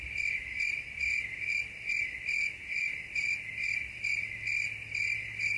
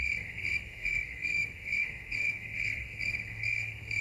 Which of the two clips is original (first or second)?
first